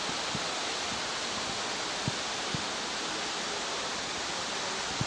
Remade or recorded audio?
remade